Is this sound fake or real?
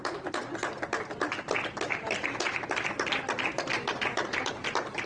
real